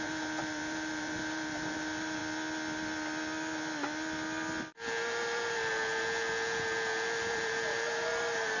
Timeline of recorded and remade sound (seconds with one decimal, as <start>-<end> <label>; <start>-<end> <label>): 0.0-2.2 remade; 2.2-7.3 recorded; 7.3-8.6 remade